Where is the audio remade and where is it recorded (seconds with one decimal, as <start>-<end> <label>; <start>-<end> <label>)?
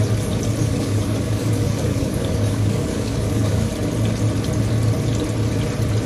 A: 0.0-0.6 recorded; 0.6-3.7 remade; 3.7-6.1 recorded